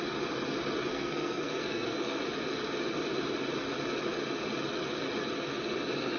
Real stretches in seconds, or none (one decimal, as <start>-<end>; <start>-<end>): 0.0-0.9; 2.2-6.2